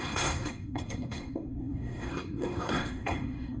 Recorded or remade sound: remade